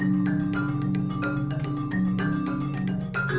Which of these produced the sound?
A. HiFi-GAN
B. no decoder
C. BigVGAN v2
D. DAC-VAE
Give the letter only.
B